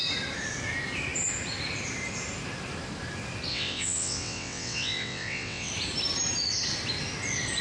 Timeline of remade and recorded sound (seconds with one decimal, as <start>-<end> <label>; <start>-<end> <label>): 0.0-3.5 recorded; 3.5-5.7 remade; 5.7-7.6 recorded